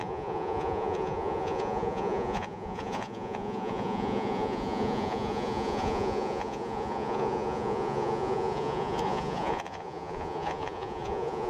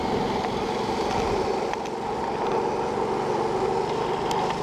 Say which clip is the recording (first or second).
second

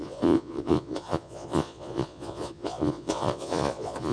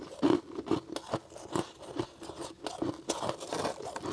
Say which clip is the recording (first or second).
second